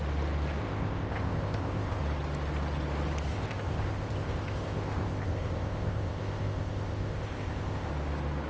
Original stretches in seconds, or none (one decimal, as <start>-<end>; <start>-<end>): 0.0-0.6; 2.0-3.3; 7.9-8.5